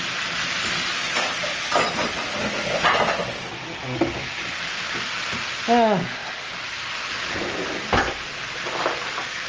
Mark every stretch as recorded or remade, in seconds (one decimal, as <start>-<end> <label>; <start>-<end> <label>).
0.0-9.5 recorded